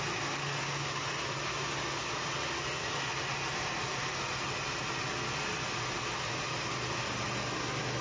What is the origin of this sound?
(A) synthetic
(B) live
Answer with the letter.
B